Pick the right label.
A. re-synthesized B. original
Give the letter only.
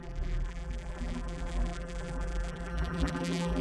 A